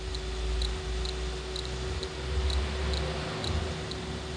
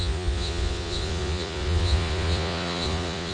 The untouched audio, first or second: first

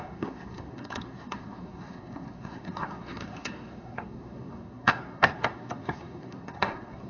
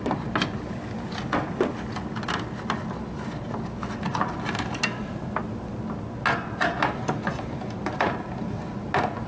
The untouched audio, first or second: second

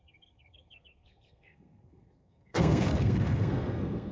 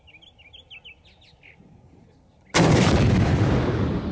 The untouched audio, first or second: second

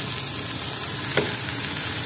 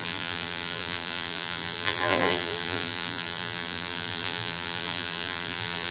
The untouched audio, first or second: first